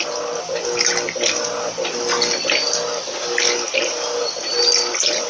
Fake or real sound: real